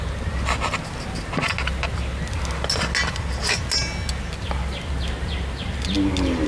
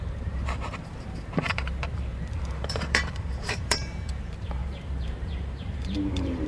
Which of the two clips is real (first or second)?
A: first